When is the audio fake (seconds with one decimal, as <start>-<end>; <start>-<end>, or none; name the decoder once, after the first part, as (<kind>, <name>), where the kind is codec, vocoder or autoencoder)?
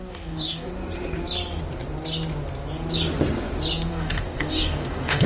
0.0-0.7 (codec, DAC); 3.9-5.3